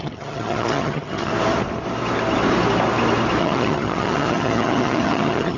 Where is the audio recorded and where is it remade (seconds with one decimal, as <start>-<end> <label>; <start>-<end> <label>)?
0.0-1.3 remade; 1.3-3.4 recorded; 3.4-5.6 remade